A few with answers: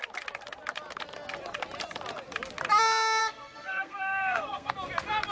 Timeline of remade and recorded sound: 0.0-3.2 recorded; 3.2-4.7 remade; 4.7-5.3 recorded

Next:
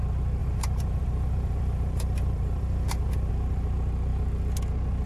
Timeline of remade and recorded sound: 0.0-0.4 recorded; 0.4-3.3 remade; 3.3-5.1 recorded